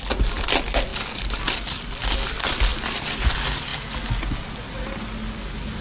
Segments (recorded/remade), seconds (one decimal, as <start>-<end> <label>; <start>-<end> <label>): 0.0-5.8 recorded

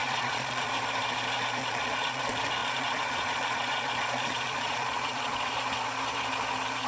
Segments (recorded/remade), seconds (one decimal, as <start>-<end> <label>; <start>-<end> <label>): 0.0-0.7 remade; 0.7-1.6 recorded; 1.6-2.2 remade; 2.2-2.6 recorded; 2.6-5.5 remade; 5.5-6.9 recorded

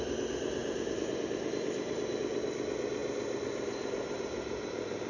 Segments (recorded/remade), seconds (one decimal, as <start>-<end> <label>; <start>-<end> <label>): 0.0-5.1 recorded

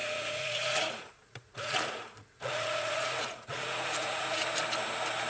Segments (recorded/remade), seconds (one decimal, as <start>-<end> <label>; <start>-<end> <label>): 0.0-4.4 remade; 4.4-5.3 recorded